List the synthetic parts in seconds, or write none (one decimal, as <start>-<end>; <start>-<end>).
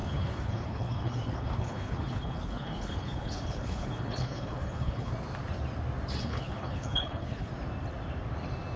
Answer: 0.0-5.1; 6.2-7.5